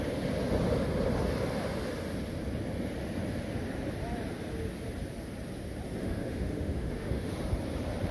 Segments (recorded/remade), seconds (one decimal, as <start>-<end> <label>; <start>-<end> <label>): 0.0-6.0 recorded; 6.0-7.3 remade; 7.3-8.1 recorded